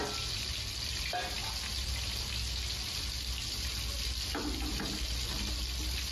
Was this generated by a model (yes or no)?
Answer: no